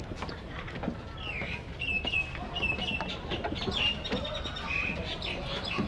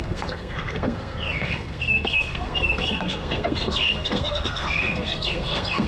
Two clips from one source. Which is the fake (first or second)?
second